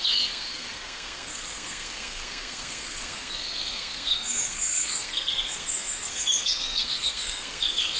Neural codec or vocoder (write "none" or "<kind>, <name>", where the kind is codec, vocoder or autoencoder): codec, SNAC